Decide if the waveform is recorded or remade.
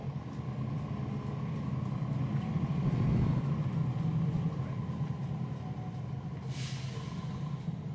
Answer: recorded